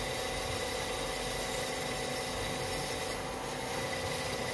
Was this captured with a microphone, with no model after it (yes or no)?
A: yes